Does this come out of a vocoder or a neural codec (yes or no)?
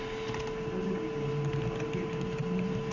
no